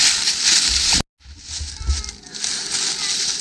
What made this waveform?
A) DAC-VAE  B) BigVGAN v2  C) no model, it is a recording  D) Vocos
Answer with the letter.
C